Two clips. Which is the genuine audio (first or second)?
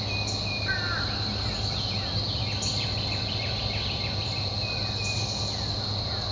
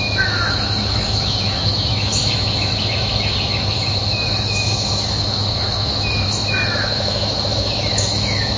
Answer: first